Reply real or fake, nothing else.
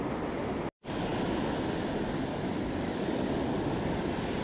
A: real